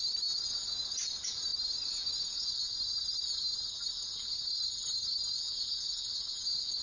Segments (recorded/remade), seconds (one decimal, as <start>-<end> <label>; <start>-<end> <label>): 0.0-6.8 recorded